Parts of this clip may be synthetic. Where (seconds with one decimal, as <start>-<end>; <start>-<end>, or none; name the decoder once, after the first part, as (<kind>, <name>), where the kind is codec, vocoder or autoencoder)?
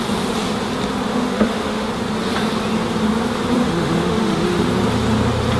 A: 1.1-1.9 (autoencoder, DAC-VAE); 3.6-4.7